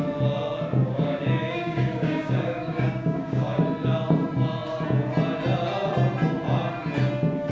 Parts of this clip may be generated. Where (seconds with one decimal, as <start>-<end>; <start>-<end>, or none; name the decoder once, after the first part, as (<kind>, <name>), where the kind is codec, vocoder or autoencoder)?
0.8-3.6 (codec, DAC)